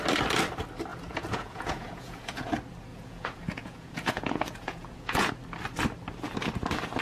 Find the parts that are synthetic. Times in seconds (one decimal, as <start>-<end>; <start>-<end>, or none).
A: 0.9-2.5; 2.9-5.3